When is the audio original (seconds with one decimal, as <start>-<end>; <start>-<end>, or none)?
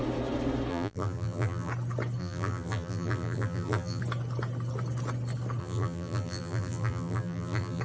0.0-0.7; 1.7-2.2; 4.0-5.6